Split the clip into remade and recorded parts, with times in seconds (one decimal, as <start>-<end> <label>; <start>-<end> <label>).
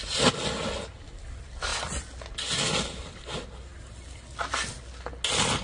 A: 0.0-5.6 recorded